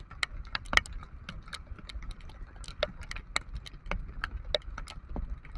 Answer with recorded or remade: recorded